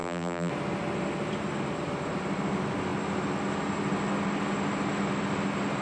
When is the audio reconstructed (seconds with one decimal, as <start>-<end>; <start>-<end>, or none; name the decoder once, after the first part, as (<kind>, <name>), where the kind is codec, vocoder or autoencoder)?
0.0-0.5 (vocoder, BigVGAN v2)

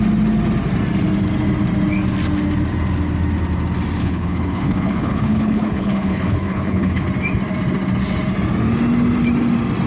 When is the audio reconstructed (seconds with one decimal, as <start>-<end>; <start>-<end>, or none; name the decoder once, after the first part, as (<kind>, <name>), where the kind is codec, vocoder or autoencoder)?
4.0-7.0 (codec, HILCodec)

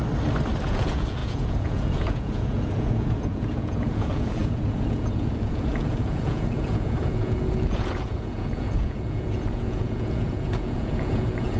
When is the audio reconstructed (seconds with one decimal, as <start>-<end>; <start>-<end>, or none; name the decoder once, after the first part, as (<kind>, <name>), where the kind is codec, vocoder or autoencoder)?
0.6-11.6 (vocoder, Vocos)

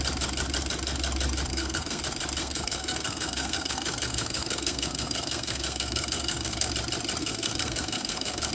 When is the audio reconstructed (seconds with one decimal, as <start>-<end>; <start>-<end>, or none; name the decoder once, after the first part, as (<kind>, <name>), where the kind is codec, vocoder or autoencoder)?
1.5-2.0 (codec, SNAC); 2.4-6.7; 7.2-8.5